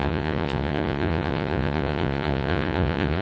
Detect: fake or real fake